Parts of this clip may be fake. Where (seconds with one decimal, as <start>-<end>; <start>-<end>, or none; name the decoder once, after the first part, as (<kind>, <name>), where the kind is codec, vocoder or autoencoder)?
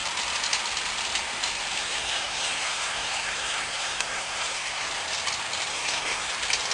1.8-4.9 (codec, SNAC); 5.7-6.3